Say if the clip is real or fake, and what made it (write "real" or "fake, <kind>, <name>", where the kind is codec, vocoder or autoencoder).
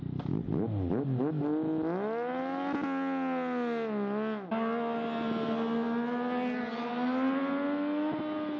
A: real